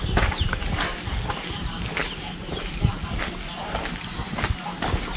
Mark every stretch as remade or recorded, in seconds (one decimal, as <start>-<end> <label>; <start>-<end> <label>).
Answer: 0.0-5.2 recorded